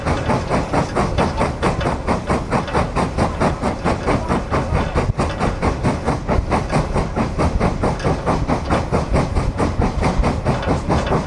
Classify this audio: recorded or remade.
recorded